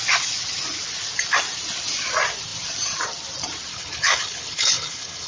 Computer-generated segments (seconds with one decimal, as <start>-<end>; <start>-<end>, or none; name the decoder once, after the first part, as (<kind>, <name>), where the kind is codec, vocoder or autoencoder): 3.7-5.3 (codec, HILCodec)